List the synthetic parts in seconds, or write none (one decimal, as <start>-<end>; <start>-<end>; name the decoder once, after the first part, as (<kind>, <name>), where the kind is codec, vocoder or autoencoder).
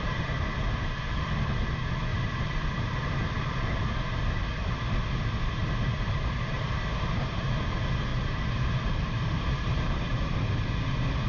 2.1-4.4 (vocoder, BigVGAN v2); 5.6-7.5; 8.1-10.6